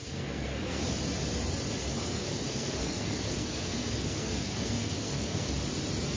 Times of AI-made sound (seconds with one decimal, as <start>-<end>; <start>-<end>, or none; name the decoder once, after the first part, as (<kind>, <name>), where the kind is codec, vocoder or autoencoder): 0.0-0.8 (codec, SNAC); 1.8-5.5